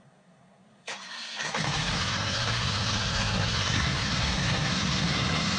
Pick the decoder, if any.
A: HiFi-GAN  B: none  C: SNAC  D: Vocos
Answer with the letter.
C